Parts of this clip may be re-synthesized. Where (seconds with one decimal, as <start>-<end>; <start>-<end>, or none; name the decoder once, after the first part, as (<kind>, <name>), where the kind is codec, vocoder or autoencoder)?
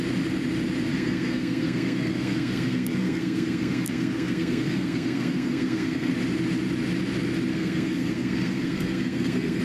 0.9-6.1 (codec, SNAC); 7.5-9.6